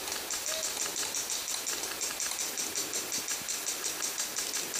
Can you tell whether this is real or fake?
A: real